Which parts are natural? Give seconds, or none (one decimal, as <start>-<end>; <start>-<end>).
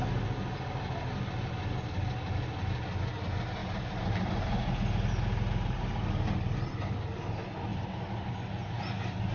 0.0-3.6; 4.7-9.3